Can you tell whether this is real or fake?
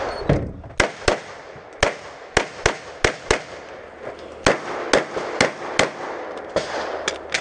real